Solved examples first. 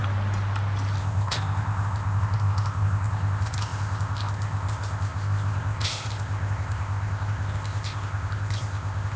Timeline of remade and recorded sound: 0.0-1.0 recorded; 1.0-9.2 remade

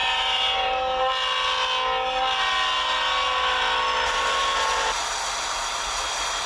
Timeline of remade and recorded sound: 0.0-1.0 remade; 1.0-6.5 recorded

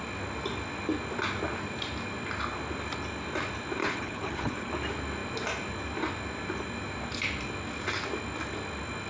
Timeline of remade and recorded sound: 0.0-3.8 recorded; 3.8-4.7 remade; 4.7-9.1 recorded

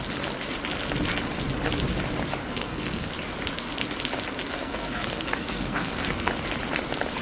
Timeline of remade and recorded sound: 0.0-2.4 recorded; 2.4-3.1 remade; 3.1-4.5 recorded; 4.5-6.3 remade; 6.3-7.2 recorded